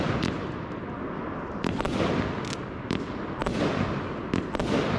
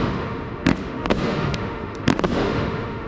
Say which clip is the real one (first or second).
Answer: first